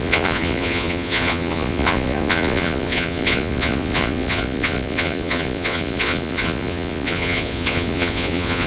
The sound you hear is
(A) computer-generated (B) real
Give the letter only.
A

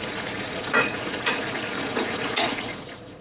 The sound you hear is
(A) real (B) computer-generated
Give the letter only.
B